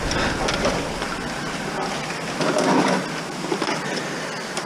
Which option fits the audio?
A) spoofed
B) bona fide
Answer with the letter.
B